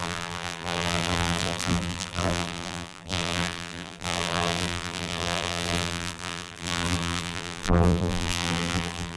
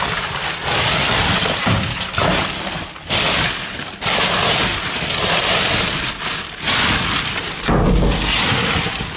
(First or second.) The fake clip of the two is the first